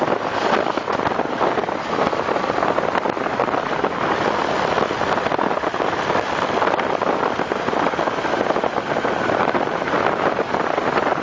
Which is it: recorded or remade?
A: remade